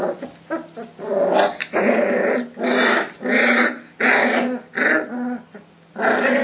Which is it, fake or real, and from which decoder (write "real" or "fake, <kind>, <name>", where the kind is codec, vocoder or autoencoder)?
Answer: real